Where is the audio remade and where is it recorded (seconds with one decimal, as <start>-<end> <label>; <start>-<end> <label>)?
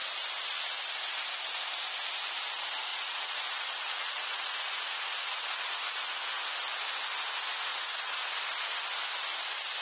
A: 0.0-2.9 recorded; 2.9-6.2 remade; 6.2-7.7 recorded; 7.7-8.3 remade; 8.3-9.8 recorded